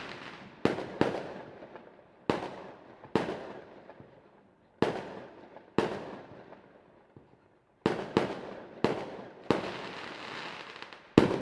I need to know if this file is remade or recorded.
recorded